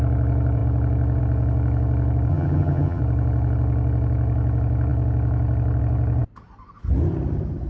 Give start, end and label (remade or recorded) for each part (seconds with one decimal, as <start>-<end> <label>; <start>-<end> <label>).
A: 0.0-2.3 recorded; 2.3-3.0 remade; 3.0-7.7 recorded